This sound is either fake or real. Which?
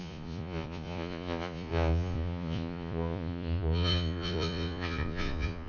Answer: fake